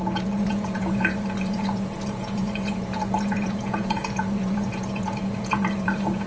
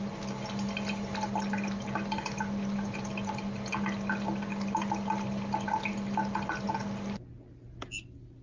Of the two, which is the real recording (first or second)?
second